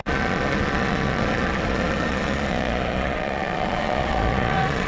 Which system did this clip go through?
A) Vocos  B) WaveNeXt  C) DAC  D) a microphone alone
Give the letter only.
A